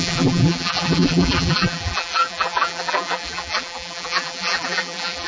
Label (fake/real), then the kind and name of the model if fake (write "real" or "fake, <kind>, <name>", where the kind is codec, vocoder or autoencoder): fake, vocoder, BigVGAN v2